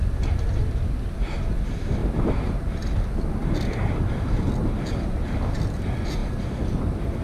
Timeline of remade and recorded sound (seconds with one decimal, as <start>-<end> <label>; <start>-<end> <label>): 0.0-2.0 recorded; 2.0-2.6 remade; 2.6-7.2 recorded